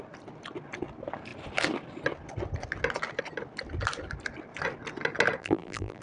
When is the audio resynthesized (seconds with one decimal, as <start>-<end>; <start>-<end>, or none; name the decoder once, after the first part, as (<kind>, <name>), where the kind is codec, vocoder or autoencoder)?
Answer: 5.4-6.0 (vocoder, BigVGAN v2)